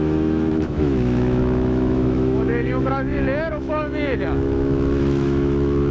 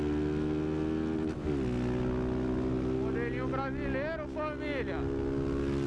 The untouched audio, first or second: second